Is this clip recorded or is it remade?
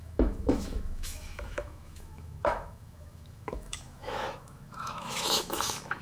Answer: remade